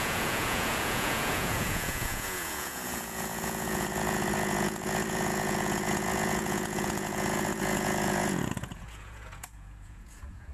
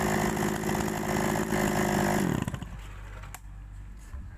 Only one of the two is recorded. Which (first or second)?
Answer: second